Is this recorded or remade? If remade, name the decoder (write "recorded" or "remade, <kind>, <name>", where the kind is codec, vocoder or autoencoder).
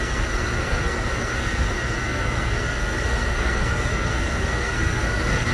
remade, codec, SNAC